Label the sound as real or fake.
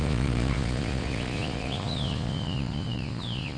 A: fake